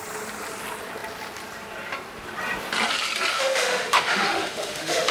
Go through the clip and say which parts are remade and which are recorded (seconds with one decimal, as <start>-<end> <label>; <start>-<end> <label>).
0.0-3.3 recorded; 3.3-5.1 remade

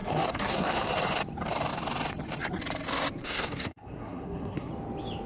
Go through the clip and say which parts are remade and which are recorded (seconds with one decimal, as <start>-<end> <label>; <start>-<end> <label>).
0.0-0.9 remade; 0.9-3.2 recorded; 3.2-4.7 remade; 4.7-5.3 recorded

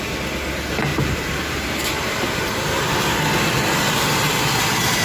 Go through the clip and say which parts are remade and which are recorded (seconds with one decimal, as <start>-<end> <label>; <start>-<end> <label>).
0.0-0.9 recorded; 0.9-3.2 remade; 3.2-5.0 recorded

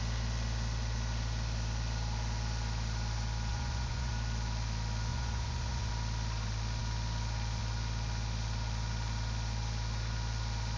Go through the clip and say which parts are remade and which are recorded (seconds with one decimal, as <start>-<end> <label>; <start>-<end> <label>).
0.0-3.5 recorded; 3.5-4.1 remade; 4.1-5.1 recorded; 5.1-5.9 remade; 5.9-10.8 recorded

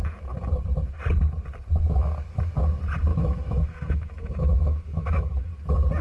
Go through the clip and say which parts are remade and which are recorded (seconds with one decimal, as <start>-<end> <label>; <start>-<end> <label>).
0.0-3.1 recorded; 3.1-5.5 remade; 5.5-6.0 recorded